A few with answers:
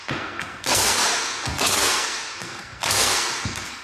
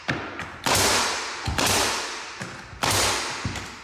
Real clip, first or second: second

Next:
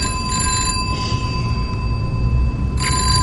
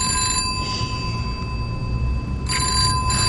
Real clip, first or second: second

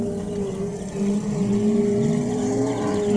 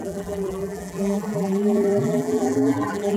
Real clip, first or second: first